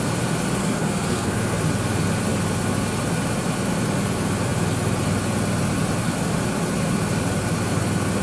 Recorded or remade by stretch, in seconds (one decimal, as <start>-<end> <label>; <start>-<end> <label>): 0.0-0.6 recorded; 0.6-1.6 remade; 1.6-8.2 recorded